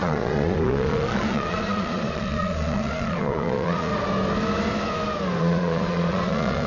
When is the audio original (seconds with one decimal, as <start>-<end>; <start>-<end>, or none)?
3.9-5.4